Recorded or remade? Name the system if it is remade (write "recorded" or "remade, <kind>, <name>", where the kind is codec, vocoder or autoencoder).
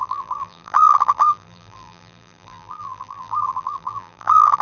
remade, vocoder, BigVGAN v2